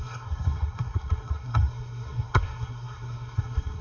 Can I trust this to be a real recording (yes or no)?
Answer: no